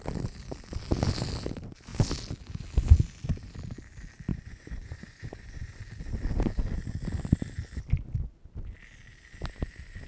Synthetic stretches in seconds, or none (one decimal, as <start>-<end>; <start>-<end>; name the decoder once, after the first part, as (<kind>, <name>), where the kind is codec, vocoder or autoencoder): 4.3-5.8 (vocoder, Vocos)